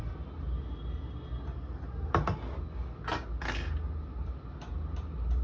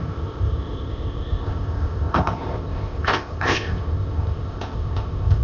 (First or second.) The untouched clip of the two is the first